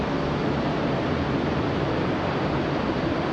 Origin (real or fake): fake